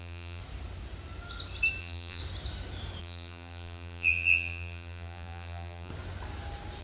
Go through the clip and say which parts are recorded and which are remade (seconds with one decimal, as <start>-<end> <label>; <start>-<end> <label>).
0.0-0.4 remade; 0.4-1.8 recorded; 1.8-2.2 remade; 2.2-3.0 recorded; 3.0-5.9 remade; 5.9-6.8 recorded